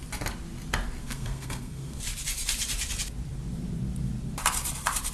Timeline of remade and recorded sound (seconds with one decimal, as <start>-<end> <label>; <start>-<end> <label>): 0.0-1.0 recorded; 1.0-2.0 remade; 2.0-5.1 recorded